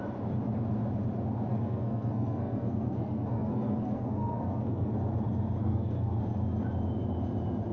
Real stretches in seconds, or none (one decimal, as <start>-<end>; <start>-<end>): 0.0-1.5; 4.9-5.6; 6.2-7.7